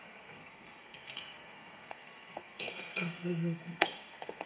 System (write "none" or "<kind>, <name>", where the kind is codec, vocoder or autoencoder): codec, SNAC